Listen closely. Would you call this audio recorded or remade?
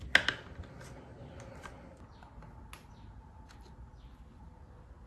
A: recorded